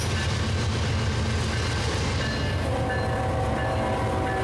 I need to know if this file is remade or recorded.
recorded